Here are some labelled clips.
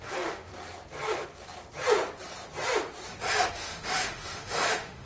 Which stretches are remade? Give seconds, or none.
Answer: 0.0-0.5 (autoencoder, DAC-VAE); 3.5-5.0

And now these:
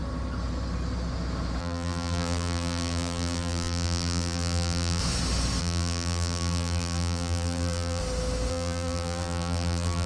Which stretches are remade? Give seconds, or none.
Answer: 1.6-5.0 (vocoder, BigVGAN v2); 5.6-8.0; 8.5-10.1

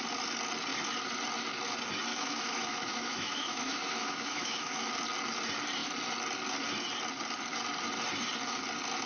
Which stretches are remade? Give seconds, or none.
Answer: 2.1-4.9 (autoencoder, DAC-VAE)

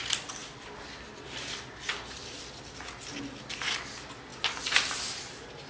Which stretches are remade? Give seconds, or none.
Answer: none

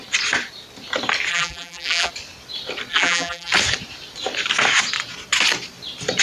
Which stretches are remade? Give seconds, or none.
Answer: 1.3-2.1 (vocoder, BigVGAN v2); 2.9-3.5

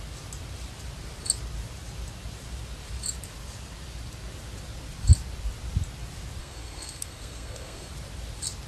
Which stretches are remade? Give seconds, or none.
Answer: 6.4-7.9 (codec, SNAC)

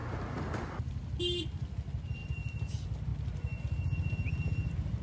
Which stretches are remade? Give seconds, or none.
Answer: none